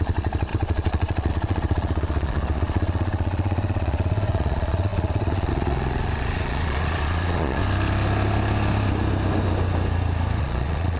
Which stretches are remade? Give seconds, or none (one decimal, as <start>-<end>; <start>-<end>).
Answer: 0.0-7.6; 10.4-11.0

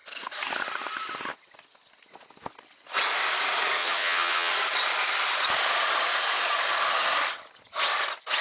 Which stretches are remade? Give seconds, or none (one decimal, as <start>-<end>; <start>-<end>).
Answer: 3.8-4.5

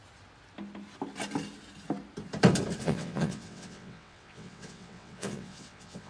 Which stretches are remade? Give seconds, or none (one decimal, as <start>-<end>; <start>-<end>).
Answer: 2.8-6.1

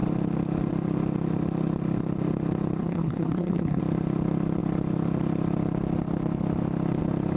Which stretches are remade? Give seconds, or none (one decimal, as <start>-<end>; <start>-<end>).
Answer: 2.8-3.8

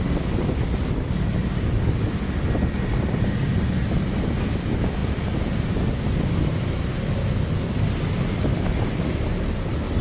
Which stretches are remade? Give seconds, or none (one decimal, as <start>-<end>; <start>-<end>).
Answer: 0.0-5.0; 7.5-10.0

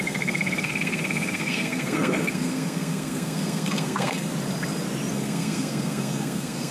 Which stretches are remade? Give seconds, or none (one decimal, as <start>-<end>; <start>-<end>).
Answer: 0.0-4.3; 5.1-6.7